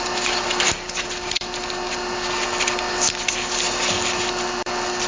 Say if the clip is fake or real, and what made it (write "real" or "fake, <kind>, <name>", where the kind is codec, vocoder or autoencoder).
real